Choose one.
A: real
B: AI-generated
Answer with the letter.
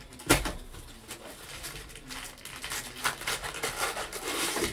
A